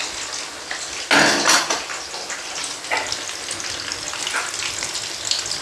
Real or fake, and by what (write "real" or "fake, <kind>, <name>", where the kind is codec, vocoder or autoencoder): real